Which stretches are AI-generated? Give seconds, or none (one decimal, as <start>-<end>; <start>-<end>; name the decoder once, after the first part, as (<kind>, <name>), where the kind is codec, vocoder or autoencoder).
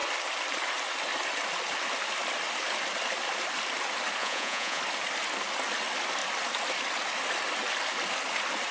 4.2-4.8 (vocoder, Vocos)